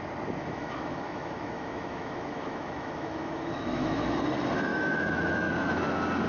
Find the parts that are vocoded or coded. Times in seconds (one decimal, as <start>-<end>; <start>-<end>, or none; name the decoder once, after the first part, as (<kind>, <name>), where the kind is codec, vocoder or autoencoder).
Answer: 0.4-4.2 (autoencoder, DAC-VAE); 4.7-5.8